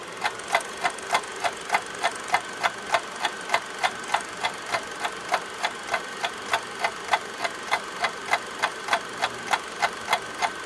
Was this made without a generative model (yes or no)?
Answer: yes